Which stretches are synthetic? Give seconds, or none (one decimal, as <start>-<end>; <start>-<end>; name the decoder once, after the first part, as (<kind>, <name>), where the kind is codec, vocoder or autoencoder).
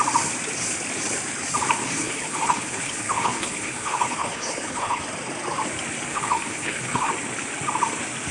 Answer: 1.8-5.0 (codec, HILCodec); 6.1-7.1